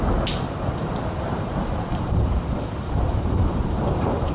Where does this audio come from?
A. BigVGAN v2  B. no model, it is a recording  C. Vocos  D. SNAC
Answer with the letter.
A